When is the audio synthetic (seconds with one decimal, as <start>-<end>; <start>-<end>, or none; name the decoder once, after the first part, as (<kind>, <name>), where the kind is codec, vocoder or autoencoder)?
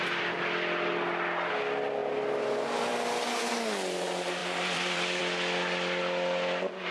4.4-5.2 (vocoder, BigVGAN v2)